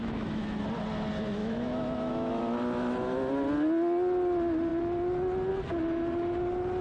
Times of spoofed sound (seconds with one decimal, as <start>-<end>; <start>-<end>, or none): 0.0-0.6; 1.4-2.4